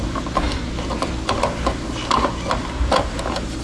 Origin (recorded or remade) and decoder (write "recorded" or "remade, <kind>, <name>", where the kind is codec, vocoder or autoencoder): recorded